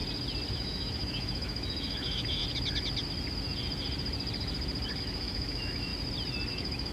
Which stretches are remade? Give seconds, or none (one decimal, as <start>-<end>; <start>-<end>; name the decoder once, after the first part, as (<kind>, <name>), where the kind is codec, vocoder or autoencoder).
0.5-2.4 (autoencoder, DAC-VAE); 5.0-5.9; 6.5-6.9